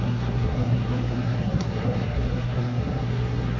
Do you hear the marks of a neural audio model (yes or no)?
yes